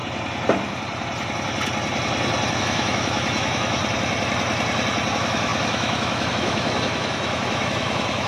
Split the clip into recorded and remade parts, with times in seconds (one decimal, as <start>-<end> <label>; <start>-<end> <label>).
0.0-2.6 recorded; 2.6-3.8 remade; 3.8-5.1 recorded; 5.1-8.3 remade